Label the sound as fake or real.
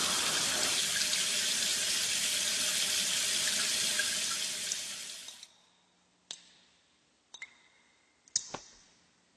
real